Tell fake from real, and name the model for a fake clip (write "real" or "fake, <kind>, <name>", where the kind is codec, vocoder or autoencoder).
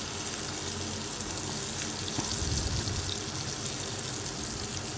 real